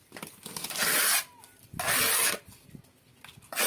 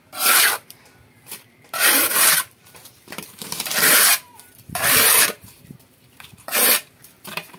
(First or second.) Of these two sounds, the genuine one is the first